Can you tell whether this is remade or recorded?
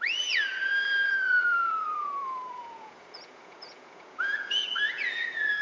remade